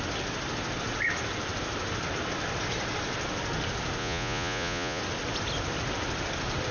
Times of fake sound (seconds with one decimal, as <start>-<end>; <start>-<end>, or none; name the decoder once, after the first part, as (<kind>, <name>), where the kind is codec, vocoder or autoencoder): 4.0-5.0 (vocoder, Vocos)

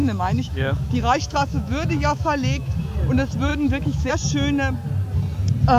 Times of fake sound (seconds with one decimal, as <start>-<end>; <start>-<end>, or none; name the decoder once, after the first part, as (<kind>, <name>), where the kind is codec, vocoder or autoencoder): 0.0-2.8 (autoencoder, DAC-VAE); 3.5-4.1

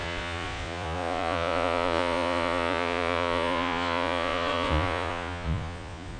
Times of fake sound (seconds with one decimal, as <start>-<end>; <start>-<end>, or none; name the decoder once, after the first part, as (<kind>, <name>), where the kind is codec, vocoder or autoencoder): 0.0-6.2 (vocoder, Vocos)

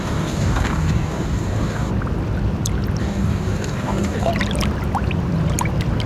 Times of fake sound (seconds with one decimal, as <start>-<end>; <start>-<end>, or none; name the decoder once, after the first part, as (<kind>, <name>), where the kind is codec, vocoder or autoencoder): 0.0-1.9 (codec, DAC); 3.0-4.3